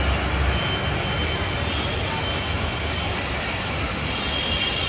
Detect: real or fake real